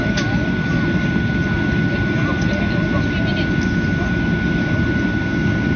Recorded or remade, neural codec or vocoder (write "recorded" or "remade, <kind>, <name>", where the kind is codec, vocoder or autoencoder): recorded